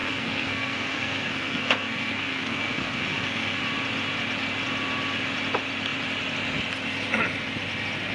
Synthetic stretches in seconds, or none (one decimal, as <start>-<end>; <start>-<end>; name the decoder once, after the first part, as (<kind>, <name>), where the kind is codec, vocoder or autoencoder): 0.0-3.6 (codec, SNAC)